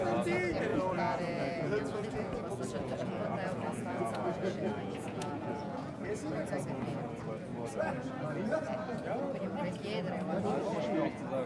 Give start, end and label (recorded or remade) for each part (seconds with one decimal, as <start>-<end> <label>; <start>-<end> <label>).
0.0-0.7 recorded; 0.7-5.9 remade; 5.9-11.5 recorded